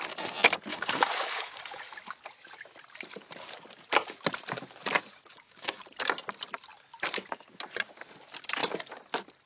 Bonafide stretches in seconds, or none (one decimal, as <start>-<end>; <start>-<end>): 0.0-0.7; 1.6-5.3; 5.8-9.5